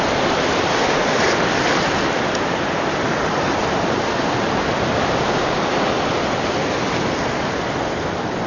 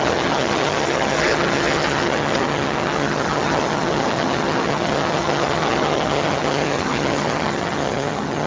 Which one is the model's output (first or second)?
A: second